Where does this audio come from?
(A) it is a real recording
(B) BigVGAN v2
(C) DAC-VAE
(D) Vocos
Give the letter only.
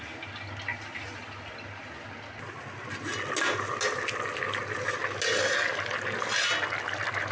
A